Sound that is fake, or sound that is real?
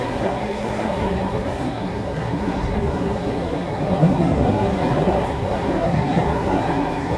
fake